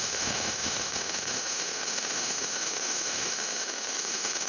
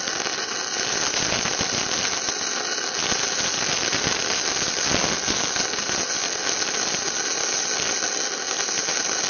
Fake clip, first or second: first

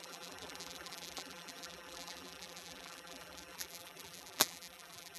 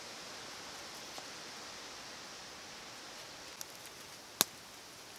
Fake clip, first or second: first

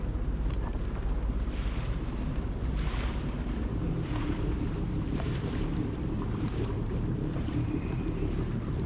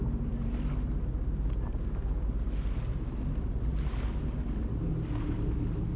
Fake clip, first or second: first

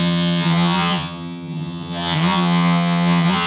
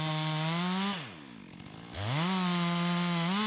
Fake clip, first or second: first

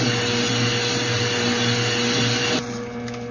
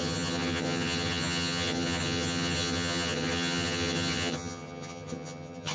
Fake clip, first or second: second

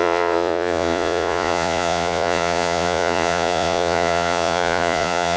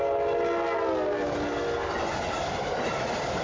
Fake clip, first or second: first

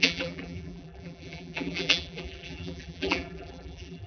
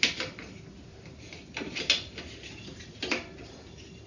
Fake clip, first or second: first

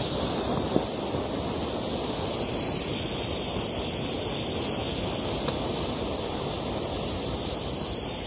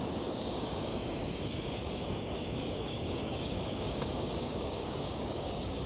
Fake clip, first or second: second